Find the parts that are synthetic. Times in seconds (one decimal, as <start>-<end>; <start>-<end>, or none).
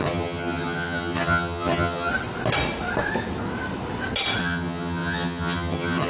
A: 0.0-2.1; 4.4-6.1